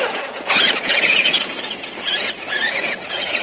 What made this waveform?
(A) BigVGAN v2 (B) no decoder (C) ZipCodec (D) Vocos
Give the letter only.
D